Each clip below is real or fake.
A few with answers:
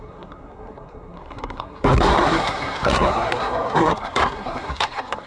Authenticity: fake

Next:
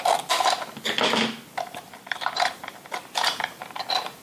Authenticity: real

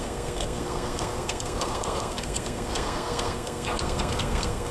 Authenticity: fake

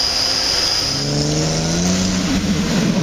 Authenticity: real